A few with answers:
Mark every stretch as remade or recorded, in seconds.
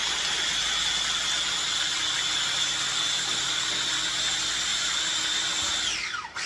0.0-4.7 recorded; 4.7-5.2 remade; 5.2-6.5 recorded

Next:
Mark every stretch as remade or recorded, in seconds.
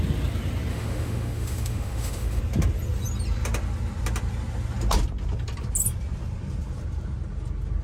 0.0-0.7 recorded; 0.7-2.4 remade; 2.4-7.8 recorded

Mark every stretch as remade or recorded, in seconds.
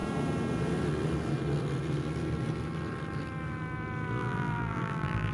0.0-4.2 recorded; 4.2-5.3 remade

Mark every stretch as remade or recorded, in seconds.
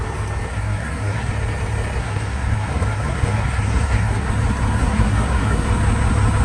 0.0-0.5 recorded; 0.5-1.3 remade; 1.3-2.0 recorded; 2.0-4.3 remade; 4.3-4.8 recorded; 4.8-5.7 remade; 5.7-6.4 recorded